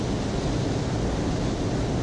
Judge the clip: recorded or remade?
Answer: recorded